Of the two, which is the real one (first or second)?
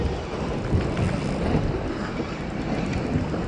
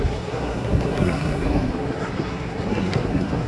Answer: first